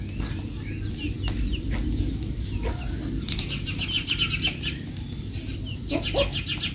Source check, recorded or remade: recorded